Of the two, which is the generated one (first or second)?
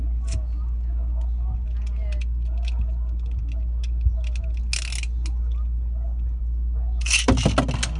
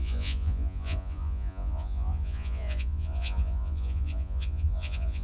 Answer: second